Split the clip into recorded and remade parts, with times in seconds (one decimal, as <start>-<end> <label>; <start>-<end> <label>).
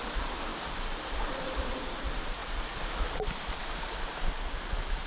0.0-0.5 remade; 0.5-1.3 recorded; 1.3-2.4 remade; 2.4-5.1 recorded